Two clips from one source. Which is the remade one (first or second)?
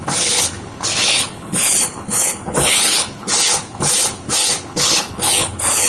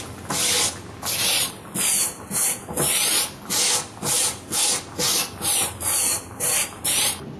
first